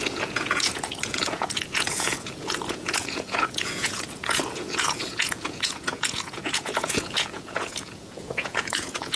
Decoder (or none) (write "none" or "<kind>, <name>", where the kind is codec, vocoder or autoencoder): vocoder, Vocos